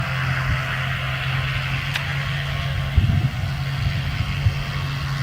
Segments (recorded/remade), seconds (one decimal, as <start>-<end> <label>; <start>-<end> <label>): 0.0-5.2 recorded